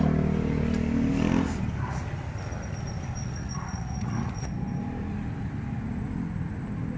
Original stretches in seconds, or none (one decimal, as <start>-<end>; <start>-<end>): 0.0-3.2; 4.5-7.0